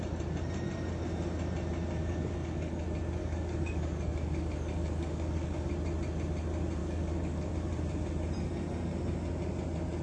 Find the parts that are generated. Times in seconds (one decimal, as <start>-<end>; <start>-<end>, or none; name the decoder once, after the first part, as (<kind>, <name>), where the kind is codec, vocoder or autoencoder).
2.0-2.8 (codec, DAC); 3.2-5.7; 6.8-7.5